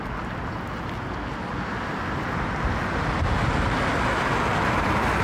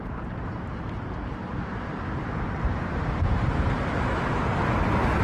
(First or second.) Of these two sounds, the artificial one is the second